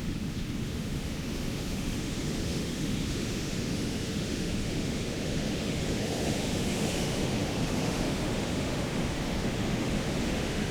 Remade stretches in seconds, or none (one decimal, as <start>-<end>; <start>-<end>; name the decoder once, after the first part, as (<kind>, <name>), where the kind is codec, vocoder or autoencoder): 0.0-10.7 (autoencoder, DAC-VAE)